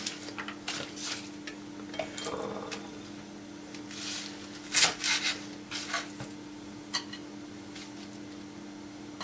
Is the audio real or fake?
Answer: real